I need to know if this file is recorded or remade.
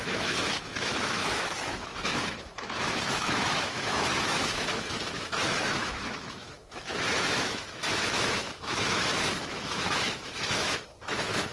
remade